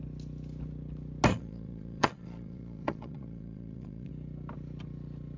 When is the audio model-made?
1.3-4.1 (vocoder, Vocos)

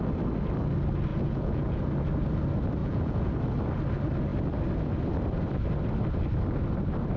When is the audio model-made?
1.1-1.8 (vocoder, Vocos); 2.8-3.3

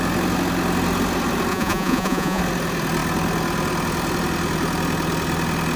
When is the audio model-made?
1.5-2.4 (vocoder, Vocos)

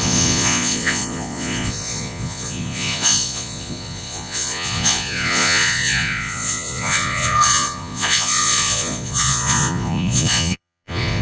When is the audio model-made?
0.0-11.2 (vocoder, Vocos)

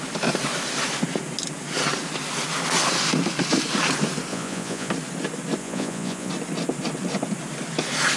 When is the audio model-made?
4.3-4.9 (vocoder, Vocos); 5.6-6.3